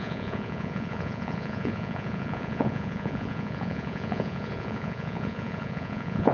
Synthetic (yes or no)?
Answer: yes